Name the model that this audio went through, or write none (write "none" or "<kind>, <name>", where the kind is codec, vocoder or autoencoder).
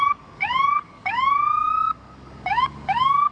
codec, DAC